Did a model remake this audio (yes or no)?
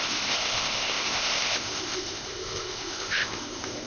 yes